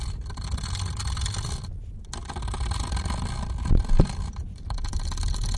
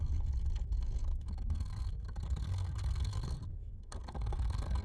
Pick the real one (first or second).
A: first